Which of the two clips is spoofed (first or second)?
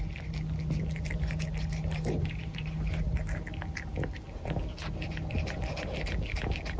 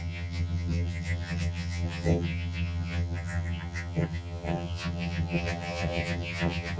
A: second